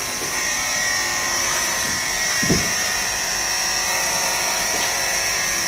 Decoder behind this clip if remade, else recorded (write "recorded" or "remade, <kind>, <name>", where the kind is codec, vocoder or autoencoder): remade, vocoder, BigVGAN v2